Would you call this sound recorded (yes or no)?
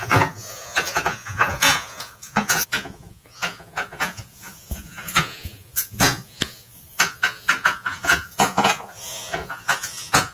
no